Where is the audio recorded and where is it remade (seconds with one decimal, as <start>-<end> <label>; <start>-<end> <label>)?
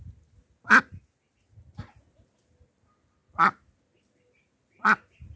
0.0-5.4 recorded